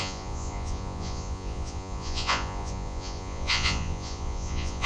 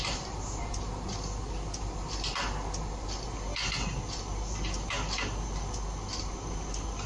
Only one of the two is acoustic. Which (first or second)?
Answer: second